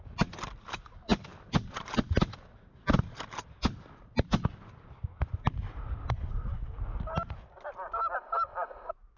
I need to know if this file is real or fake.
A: real